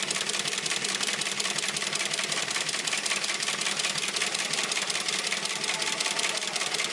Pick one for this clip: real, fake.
real